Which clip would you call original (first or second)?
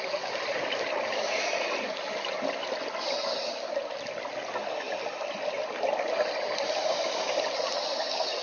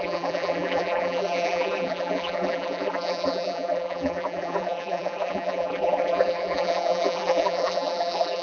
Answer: first